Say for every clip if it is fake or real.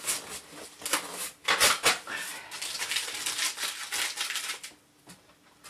real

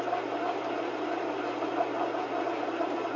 real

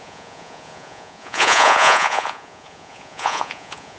fake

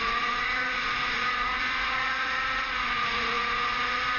fake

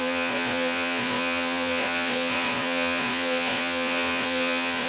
fake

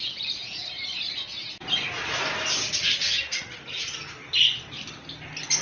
real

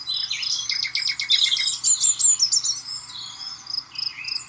real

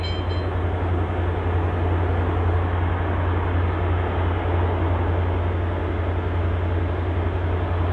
real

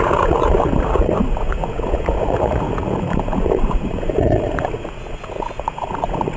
fake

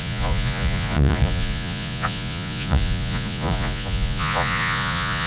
fake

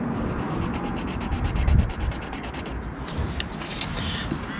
real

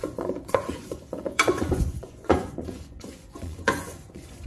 fake